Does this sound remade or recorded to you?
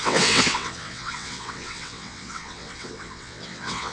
remade